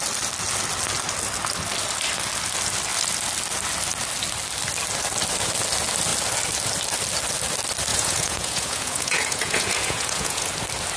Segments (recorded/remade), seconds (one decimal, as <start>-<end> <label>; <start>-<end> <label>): 0.0-7.9 recorded; 7.9-10.5 remade; 10.5-11.0 recorded